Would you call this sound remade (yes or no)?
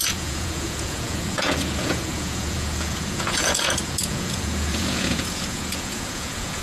yes